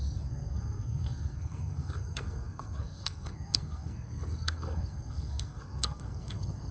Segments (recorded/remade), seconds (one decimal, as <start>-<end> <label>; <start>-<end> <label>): 0.0-6.7 remade

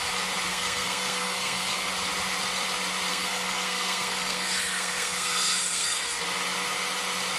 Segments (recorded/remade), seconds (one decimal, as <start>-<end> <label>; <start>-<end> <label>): 0.0-0.5 recorded; 0.5-1.9 remade; 1.9-3.1 recorded; 3.1-6.2 remade; 6.2-7.4 recorded